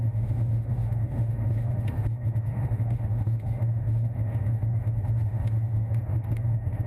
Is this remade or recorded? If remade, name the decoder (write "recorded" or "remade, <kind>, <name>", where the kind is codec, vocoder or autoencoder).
remade, autoencoder, DAC-VAE